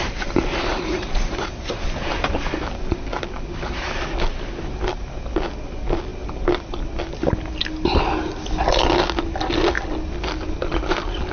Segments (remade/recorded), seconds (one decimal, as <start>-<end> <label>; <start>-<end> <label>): 0.0-0.7 recorded; 0.7-1.7 remade; 1.7-11.3 recorded